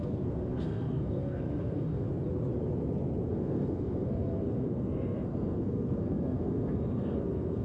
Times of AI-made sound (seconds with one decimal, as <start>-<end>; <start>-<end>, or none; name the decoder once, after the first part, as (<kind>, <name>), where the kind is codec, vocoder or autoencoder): 0.0-2.1 (codec, SNAC); 3.3-7.6